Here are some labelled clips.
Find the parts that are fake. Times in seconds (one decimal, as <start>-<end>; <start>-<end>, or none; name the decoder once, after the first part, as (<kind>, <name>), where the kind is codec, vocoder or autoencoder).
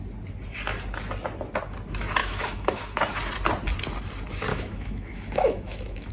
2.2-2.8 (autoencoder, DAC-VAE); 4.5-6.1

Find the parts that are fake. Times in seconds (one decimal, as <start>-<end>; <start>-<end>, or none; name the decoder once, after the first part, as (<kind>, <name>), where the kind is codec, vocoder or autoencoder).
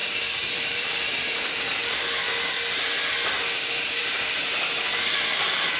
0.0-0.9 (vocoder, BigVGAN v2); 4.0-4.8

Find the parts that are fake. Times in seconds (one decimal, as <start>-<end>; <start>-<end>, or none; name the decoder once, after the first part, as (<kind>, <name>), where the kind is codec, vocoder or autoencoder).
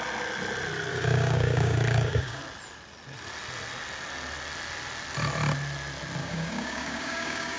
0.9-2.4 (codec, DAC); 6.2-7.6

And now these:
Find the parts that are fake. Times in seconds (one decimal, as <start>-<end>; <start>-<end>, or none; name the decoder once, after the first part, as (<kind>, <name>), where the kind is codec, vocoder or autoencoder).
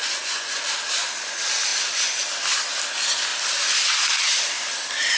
0.0-0.6 (vocoder, Vocos)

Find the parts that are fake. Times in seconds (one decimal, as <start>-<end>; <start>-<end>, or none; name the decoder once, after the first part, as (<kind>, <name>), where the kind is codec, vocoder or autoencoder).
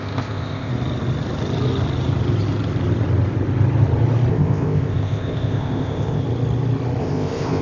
0.0-0.7 (codec, ZipCodec); 4.3-6.2; 7.0-7.6